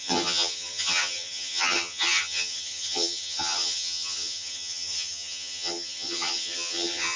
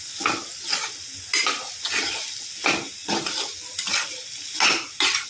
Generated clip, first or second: first